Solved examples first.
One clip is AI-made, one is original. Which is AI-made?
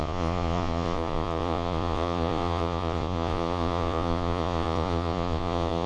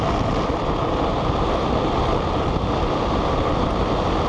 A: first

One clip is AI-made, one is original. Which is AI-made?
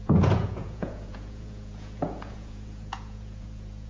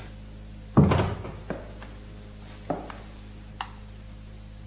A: first